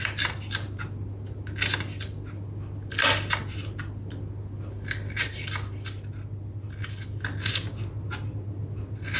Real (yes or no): yes